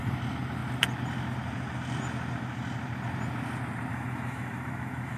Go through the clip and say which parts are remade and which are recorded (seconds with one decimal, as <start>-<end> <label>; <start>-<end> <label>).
0.0-3.9 recorded; 3.9-5.2 remade